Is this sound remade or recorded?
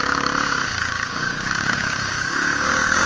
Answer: remade